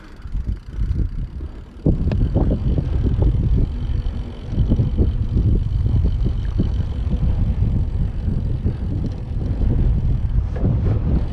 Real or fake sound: real